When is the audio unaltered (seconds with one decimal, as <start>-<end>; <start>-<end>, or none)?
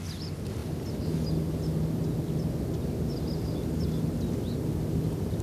0.0-5.4